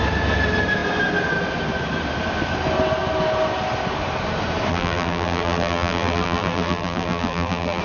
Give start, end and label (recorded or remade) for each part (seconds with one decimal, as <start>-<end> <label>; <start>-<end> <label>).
0.0-4.7 recorded; 4.7-7.8 remade